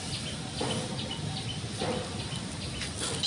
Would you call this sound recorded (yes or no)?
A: yes